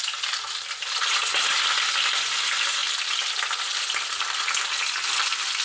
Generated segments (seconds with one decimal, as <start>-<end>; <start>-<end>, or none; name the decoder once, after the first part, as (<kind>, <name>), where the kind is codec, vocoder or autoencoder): none